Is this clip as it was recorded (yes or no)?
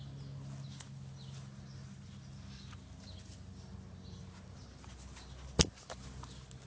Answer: yes